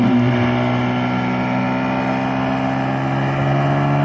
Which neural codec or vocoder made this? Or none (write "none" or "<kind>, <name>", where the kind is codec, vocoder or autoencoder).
none